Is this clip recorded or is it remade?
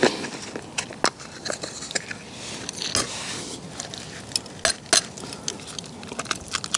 recorded